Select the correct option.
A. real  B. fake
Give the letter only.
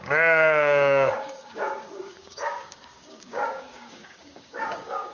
B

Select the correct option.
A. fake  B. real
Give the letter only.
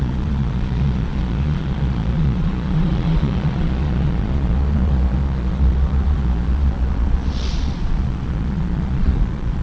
A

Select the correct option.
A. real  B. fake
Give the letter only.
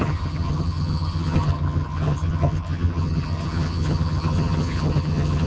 B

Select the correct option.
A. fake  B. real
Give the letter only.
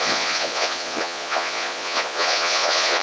A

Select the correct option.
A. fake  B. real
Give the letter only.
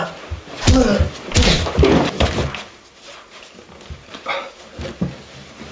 B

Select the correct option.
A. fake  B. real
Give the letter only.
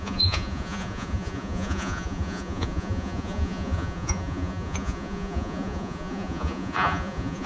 A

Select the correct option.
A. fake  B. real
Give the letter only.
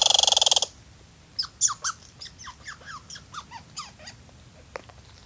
B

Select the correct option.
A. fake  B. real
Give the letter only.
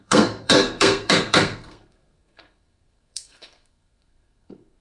A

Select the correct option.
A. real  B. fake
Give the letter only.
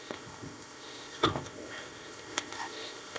B